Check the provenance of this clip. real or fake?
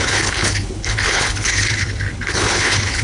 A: fake